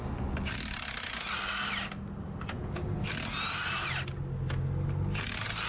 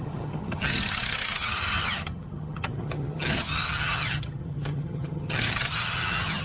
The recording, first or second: first